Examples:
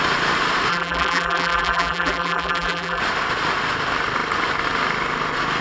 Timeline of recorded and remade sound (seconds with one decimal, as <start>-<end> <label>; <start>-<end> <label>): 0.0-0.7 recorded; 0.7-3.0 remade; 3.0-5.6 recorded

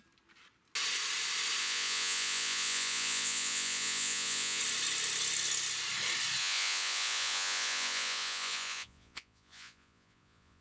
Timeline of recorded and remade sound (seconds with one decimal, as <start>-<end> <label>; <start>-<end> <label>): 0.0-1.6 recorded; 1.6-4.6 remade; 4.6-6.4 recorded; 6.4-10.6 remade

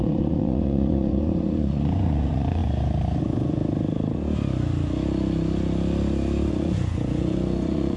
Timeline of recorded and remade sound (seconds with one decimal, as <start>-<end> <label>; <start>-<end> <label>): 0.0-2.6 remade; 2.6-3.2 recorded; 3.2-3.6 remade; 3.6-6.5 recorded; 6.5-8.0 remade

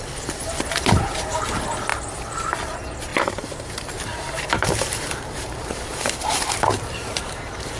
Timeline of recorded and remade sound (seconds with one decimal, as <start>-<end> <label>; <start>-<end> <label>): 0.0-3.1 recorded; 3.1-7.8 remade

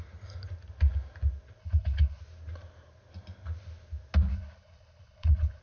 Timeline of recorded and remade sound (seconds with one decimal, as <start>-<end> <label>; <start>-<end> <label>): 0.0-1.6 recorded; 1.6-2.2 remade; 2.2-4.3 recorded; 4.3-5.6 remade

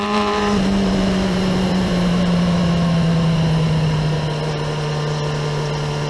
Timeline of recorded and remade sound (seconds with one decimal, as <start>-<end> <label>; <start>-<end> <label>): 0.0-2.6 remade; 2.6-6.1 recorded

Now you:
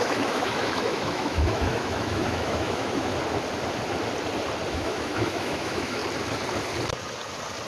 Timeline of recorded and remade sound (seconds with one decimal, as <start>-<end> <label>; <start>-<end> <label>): 0.0-3.1 remade; 3.1-4.7 recorded; 4.7-6.0 remade; 6.0-7.7 recorded

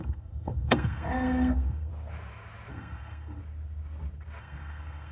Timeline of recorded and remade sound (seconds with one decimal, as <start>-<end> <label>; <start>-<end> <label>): 0.0-1.9 remade; 1.9-2.7 recorded; 2.7-3.4 remade; 3.4-4.4 recorded; 4.4-5.1 remade